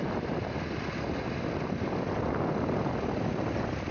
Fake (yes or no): no